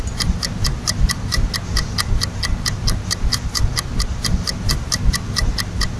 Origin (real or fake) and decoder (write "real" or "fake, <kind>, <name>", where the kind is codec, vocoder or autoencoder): real